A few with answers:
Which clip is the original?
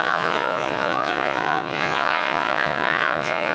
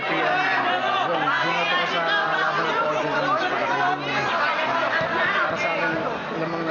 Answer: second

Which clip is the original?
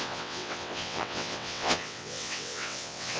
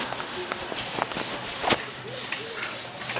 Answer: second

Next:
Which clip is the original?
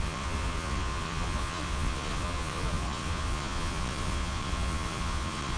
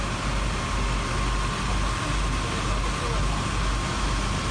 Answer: second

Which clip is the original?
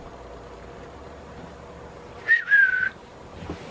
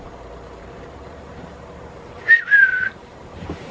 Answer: first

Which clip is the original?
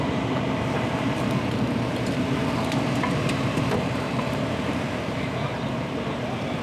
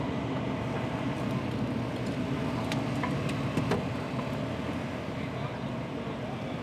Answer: second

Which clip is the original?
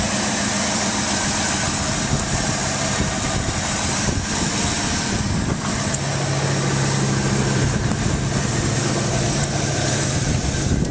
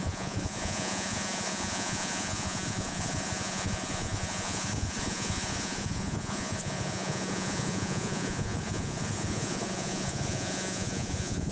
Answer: first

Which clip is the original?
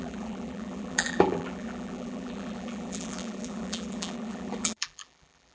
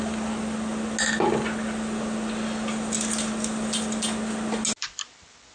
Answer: second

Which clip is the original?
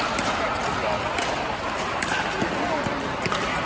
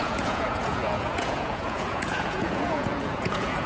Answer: first